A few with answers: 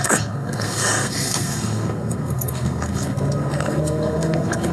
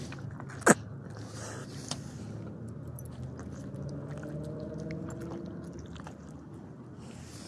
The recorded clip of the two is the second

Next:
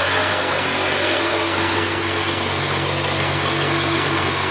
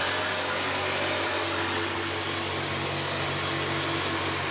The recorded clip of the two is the second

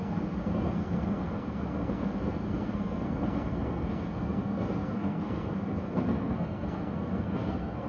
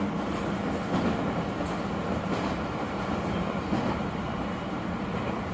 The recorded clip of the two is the second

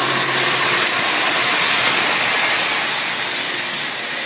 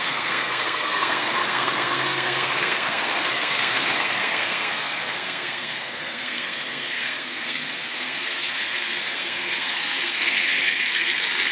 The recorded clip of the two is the first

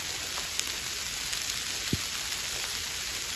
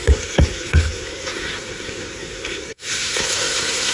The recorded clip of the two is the first